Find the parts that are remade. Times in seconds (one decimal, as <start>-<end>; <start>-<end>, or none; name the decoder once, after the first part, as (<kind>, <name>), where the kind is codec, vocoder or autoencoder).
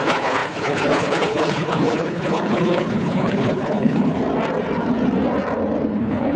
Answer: 0.0-4.2 (codec, HILCodec); 5.9-6.4